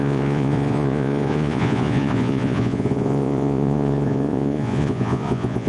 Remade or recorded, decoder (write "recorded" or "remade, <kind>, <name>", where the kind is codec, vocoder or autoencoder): remade, vocoder, Vocos